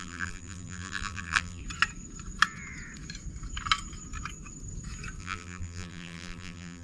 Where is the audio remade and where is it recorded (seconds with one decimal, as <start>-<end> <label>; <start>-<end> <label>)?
0.0-1.6 remade; 1.6-5.2 recorded; 5.2-6.8 remade